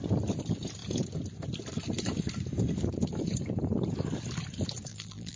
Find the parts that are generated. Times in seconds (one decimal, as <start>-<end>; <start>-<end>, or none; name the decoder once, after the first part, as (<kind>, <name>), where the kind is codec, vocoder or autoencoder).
4.9-5.4 (vocoder, BigVGAN v2)